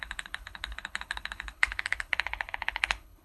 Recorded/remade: remade